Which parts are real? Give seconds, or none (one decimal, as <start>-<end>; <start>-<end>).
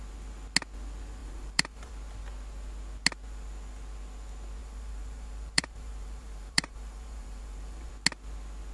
0.0-1.2; 1.9-4.6; 7.9-8.7